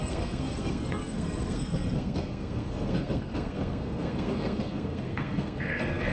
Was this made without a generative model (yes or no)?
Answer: no